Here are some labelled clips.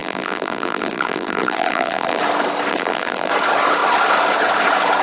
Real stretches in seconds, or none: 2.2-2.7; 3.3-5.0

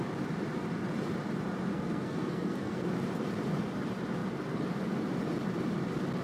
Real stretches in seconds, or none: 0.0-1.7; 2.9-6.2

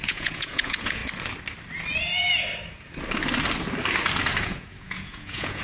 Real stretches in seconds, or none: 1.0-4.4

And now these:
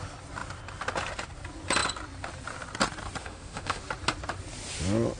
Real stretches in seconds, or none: 0.0-3.2; 3.8-5.2